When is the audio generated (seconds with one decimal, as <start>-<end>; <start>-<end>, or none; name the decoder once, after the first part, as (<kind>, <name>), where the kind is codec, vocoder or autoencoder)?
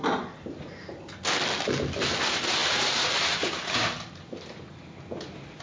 2.6-3.5 (vocoder, BigVGAN v2)